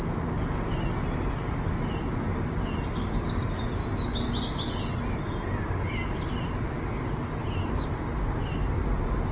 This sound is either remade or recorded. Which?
recorded